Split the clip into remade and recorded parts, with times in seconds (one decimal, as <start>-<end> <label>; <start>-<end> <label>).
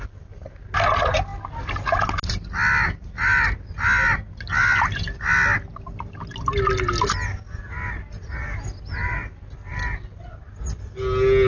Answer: 0.0-11.5 recorded